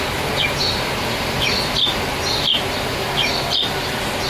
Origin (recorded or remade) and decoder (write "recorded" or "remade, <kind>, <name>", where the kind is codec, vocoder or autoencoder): recorded